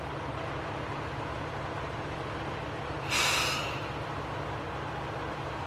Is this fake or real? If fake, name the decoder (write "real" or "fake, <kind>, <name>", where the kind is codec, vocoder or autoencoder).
real